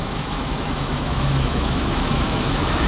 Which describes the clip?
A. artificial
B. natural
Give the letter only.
A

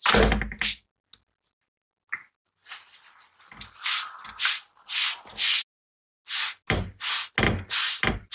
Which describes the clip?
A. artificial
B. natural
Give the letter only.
B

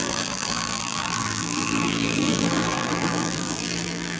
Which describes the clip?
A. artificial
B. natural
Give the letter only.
A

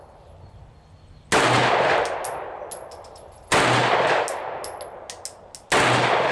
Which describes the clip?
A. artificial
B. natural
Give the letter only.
B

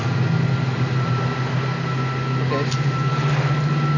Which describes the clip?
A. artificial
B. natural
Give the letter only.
B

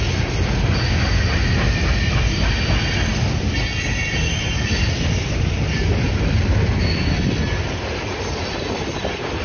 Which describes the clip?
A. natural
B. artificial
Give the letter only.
A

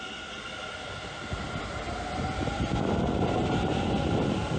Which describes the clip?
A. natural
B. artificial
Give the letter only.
A